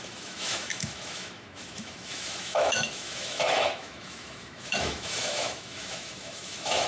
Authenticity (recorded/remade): remade